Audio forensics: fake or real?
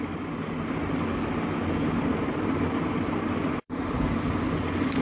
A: real